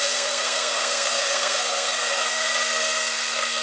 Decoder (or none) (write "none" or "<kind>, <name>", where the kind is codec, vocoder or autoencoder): codec, SNAC